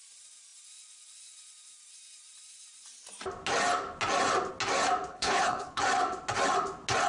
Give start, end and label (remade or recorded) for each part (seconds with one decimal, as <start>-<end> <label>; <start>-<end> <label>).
0.0-5.1 recorded; 5.1-5.8 remade; 5.8-7.1 recorded